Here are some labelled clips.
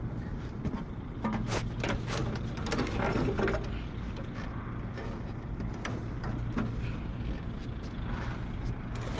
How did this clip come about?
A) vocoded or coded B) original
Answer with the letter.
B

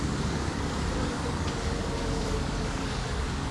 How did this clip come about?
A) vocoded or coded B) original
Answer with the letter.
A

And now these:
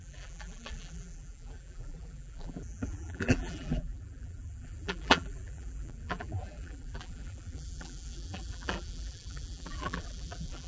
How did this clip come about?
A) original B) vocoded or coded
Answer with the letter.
B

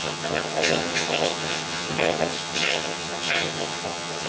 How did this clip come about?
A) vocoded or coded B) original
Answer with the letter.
A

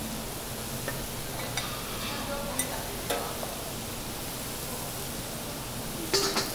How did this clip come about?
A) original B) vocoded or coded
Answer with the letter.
A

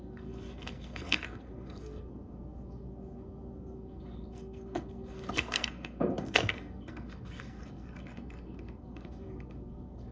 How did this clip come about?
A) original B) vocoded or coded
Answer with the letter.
B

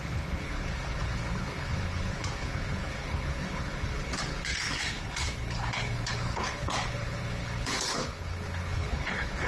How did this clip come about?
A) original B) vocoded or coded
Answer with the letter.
B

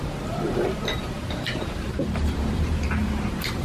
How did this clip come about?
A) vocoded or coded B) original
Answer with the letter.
A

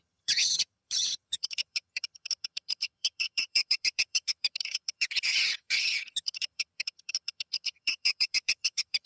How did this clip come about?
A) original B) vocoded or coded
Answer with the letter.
B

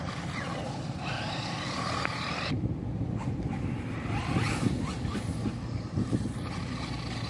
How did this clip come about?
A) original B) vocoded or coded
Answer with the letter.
A